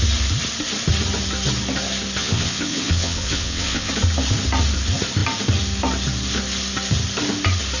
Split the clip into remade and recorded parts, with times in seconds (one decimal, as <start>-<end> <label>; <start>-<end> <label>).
0.0-2.2 recorded; 2.2-3.9 remade; 3.9-7.8 recorded